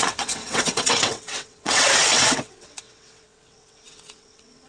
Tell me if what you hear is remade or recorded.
remade